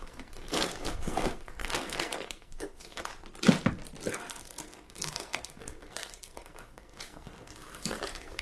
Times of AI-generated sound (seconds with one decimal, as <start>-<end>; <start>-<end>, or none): 0.0-3.1; 4.1-8.4